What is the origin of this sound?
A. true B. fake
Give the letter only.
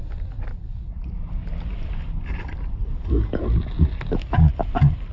A